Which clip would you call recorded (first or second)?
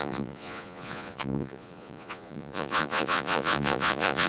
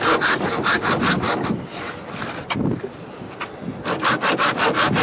second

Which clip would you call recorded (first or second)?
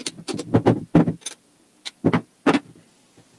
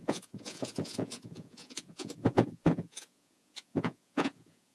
first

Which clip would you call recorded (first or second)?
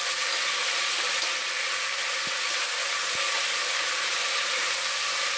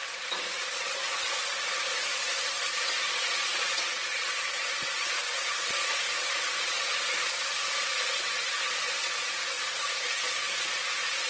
first